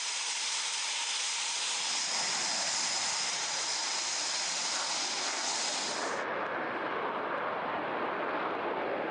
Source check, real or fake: real